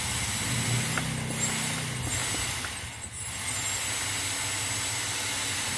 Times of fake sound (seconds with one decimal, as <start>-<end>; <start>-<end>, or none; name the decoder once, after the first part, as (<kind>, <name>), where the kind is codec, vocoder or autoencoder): none